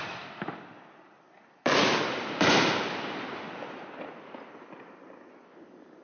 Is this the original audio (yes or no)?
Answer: yes